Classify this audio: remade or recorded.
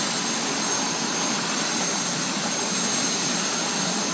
recorded